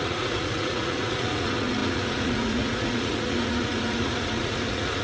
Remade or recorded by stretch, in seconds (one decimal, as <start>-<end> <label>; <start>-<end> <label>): 0.0-5.0 remade